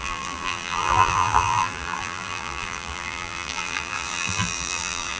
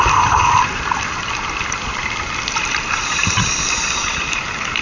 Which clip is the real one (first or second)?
second